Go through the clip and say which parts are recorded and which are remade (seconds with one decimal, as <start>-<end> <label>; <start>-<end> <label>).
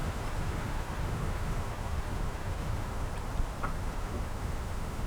0.0-3.1 remade; 3.1-3.8 recorded; 3.8-5.1 remade